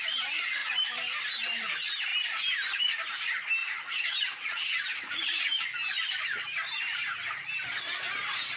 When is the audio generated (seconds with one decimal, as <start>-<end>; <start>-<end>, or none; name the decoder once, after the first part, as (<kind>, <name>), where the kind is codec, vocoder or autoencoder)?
3.6-5.1 (vocoder, Vocos)